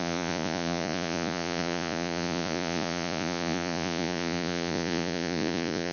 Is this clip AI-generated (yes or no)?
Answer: yes